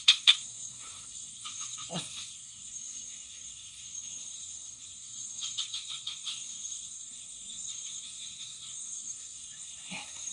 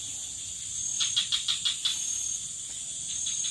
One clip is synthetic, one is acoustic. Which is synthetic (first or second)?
first